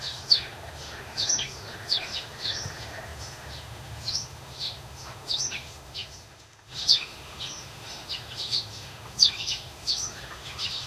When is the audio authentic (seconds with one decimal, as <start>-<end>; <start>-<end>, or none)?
none

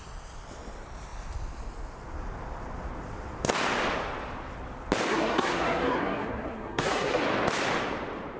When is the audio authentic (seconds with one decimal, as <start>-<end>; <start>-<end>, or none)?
0.0-5.1; 7.2-8.4

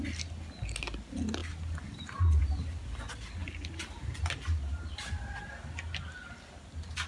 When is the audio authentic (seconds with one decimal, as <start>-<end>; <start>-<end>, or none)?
0.0-7.1

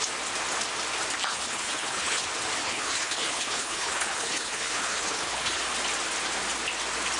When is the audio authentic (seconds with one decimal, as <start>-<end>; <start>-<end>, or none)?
0.0-1.3; 2.2-2.6; 5.6-7.2

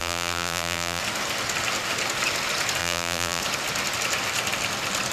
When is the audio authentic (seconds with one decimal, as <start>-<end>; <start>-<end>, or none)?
1.0-2.8; 3.4-5.1

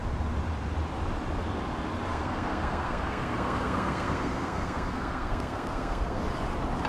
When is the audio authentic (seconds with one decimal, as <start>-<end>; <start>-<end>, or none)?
0.0-2.1; 6.2-6.9

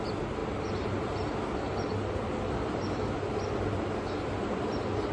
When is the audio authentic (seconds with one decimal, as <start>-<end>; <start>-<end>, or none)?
0.0-5.1

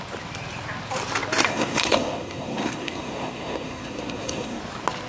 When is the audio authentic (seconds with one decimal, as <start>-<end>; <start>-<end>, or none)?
0.0-1.5; 4.6-5.1